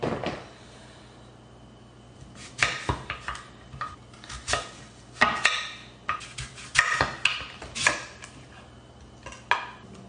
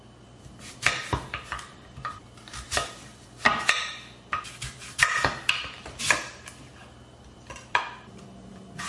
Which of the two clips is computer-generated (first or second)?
second